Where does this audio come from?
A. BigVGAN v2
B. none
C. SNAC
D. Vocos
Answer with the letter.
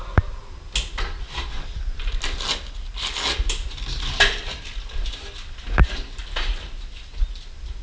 B